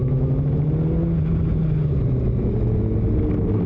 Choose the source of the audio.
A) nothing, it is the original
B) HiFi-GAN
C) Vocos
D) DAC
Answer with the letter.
A